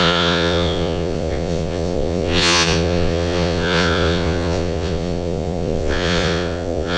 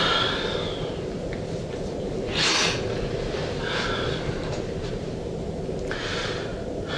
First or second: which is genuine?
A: second